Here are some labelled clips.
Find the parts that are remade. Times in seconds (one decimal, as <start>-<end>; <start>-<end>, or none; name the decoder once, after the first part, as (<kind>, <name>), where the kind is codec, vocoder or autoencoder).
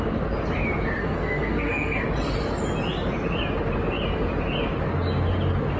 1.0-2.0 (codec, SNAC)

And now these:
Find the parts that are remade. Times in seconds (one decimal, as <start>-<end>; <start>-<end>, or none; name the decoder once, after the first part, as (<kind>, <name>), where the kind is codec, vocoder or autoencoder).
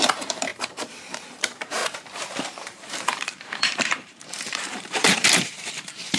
0.0-1.8 (vocoder, BigVGAN v2); 2.4-6.2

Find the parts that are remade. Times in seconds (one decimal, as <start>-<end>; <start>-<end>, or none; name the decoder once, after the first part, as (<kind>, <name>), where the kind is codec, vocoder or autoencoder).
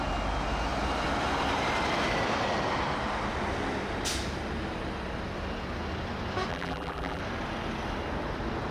6.5-7.2 (vocoder, BigVGAN v2)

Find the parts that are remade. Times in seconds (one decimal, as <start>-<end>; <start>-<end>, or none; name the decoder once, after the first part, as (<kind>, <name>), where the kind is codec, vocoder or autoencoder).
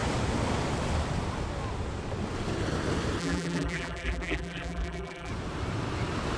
3.2-5.3 (vocoder, BigVGAN v2)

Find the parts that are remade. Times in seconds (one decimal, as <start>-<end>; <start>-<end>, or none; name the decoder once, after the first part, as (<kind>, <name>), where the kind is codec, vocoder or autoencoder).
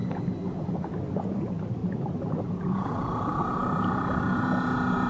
1.8-4.2 (vocoder, BigVGAN v2)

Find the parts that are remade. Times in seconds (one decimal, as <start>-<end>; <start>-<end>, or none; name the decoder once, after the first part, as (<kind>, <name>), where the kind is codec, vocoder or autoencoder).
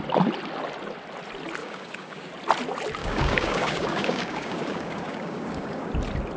1.6-2.3 (codec, DAC); 3.0-5.9